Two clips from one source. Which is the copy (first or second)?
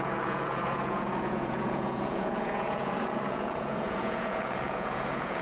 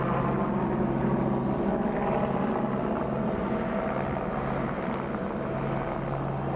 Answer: first